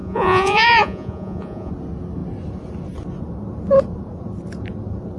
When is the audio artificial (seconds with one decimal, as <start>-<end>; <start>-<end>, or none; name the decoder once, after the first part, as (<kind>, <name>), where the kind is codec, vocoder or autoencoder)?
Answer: 0.0-1.7 (vocoder, Vocos)